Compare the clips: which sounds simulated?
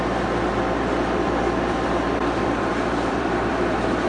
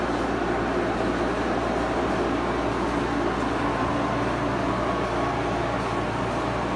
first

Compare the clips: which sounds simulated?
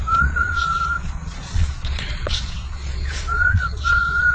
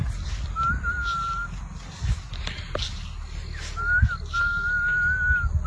first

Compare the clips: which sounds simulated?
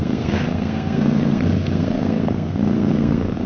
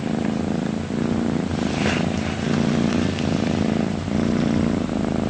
first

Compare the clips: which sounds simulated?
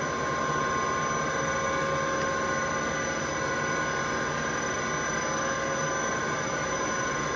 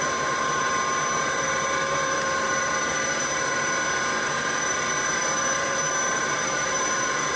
second